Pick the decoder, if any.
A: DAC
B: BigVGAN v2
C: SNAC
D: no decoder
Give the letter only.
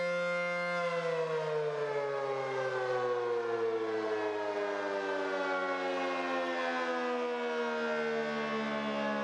D